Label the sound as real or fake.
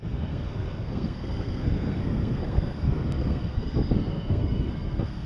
fake